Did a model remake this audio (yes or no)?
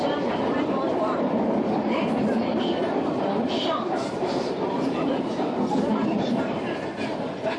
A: yes